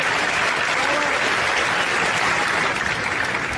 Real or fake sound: real